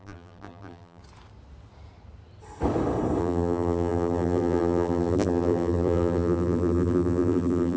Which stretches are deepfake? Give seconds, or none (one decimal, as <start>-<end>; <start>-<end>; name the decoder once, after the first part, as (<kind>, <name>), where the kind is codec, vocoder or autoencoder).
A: 0.0-1.0 (vocoder, BigVGAN v2); 3.2-7.8